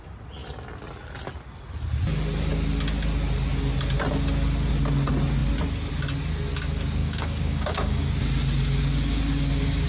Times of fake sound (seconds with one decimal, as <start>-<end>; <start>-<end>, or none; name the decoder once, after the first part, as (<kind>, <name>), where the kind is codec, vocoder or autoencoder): 7.0-8.1 (codec, DAC)